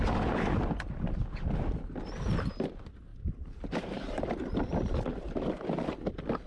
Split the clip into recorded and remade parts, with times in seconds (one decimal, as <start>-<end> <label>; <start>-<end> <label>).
0.0-3.1 recorded; 3.1-3.8 remade; 3.8-5.1 recorded; 5.1-5.7 remade; 5.7-6.5 recorded